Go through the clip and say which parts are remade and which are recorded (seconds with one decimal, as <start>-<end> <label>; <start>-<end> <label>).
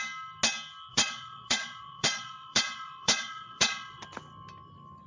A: 0.0-0.9 recorded; 0.9-4.0 remade; 4.0-5.1 recorded